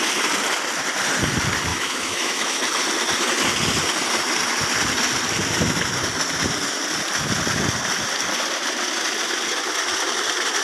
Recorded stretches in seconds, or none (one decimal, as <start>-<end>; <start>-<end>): 0.0-1.7; 2.6-10.6